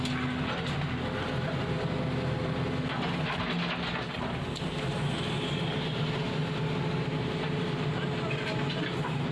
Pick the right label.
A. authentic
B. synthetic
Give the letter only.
A